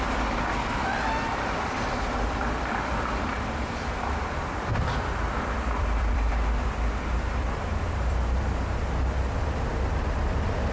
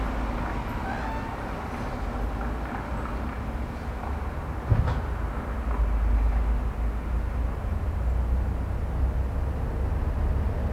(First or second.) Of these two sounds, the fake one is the first